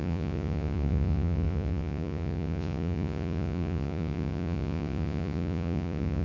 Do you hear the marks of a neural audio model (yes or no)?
yes